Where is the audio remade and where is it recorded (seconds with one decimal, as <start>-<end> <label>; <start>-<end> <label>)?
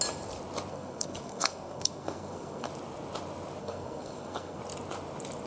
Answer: 0.0-0.7 recorded; 0.7-2.7 remade; 2.7-3.6 recorded; 3.6-4.6 remade; 4.6-5.5 recorded